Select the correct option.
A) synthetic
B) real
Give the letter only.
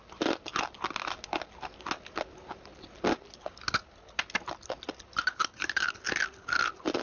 B